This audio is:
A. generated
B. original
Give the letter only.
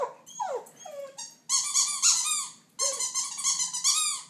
B